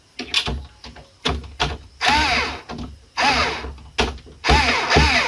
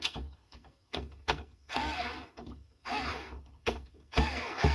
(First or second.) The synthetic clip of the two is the second